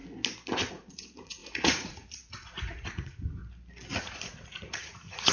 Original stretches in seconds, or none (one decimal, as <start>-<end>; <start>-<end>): 0.0-0.7; 3.4-4.0